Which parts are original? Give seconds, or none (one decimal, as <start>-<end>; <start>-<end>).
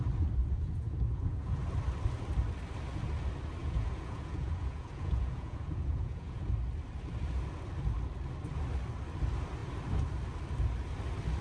0.0-0.4; 1.6-3.6; 6.5-11.4